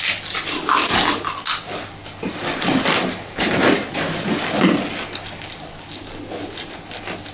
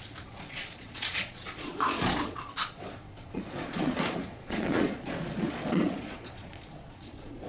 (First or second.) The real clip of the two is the first